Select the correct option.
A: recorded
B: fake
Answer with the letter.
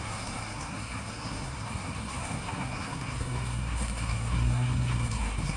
B